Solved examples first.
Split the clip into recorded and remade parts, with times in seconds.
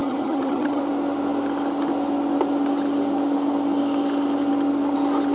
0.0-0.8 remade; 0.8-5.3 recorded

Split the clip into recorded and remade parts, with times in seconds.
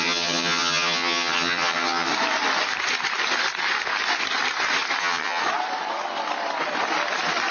0.0-2.1 remade; 2.1-5.0 recorded; 5.0-5.4 remade; 5.4-7.5 recorded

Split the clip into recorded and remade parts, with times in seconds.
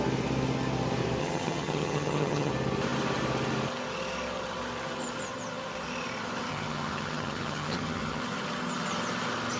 0.0-1.2 recorded; 1.2-2.5 remade; 2.5-6.5 recorded; 6.5-8.2 remade; 8.2-9.6 recorded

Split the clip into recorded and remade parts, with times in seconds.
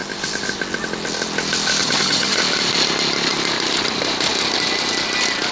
0.0-1.8 recorded; 1.8-2.4 remade; 2.4-5.5 recorded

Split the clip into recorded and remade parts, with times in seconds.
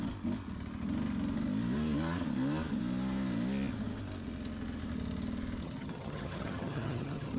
0.0-5.6 recorded; 5.6-7.4 remade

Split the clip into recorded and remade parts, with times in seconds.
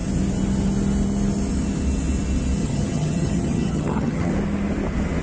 0.0-2.6 recorded; 2.6-4.3 remade; 4.3-5.2 recorded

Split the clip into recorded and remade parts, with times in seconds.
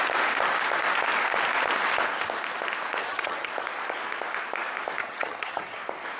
0.0-3.0 recorded; 3.0-3.5 remade; 3.5-5.0 recorded; 5.0-5.8 remade; 5.8-6.2 recorded